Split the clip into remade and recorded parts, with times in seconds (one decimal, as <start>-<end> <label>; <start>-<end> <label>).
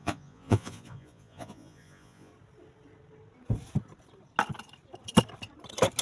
0.0-2.3 remade; 2.3-6.0 recorded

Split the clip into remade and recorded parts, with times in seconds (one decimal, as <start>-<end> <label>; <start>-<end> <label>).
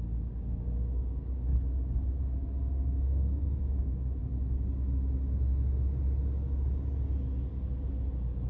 0.0-1.5 remade; 1.5-3.0 recorded; 3.0-4.2 remade; 4.2-8.5 recorded